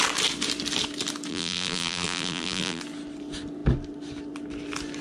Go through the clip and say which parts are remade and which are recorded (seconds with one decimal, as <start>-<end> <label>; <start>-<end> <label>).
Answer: 0.0-1.3 recorded; 1.3-2.8 remade; 2.8-5.0 recorded